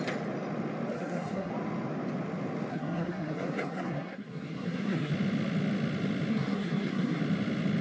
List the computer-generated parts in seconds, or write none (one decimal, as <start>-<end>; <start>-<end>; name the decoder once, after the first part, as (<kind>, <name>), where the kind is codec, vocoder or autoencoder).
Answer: 0.9-1.5 (codec, SNAC); 2.7-5.1; 6.3-7.2